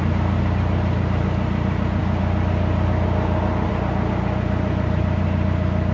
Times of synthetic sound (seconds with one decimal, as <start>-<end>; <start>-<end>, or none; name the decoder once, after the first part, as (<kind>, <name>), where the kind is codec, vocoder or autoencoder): none